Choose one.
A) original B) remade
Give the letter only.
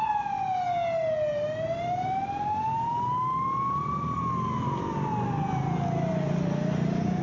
A